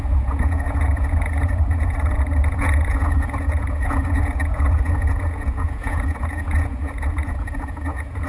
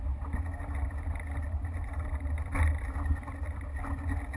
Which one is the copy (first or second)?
first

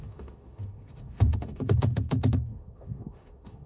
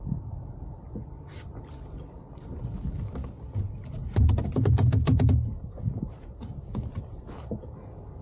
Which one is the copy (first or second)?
first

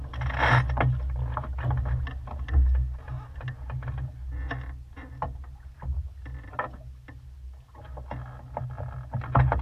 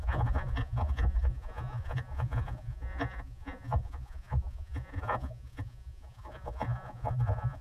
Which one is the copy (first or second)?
second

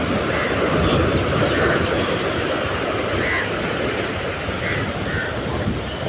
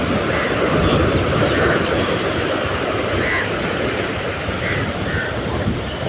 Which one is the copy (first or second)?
second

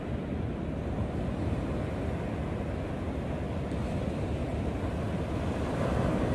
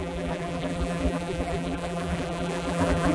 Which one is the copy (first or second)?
second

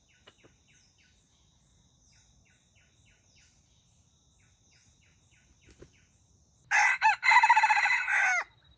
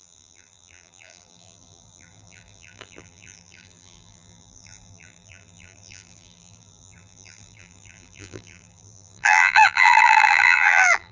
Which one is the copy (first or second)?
second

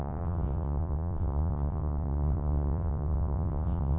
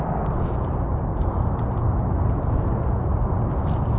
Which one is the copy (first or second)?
first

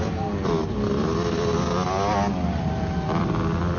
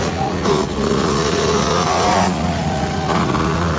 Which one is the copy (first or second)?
second